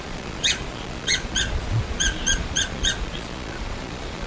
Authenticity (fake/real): fake